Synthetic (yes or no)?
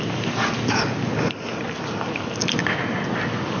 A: no